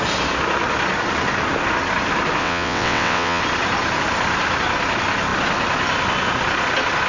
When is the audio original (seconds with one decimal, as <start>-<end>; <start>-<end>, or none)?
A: 0.0-2.4; 3.4-7.1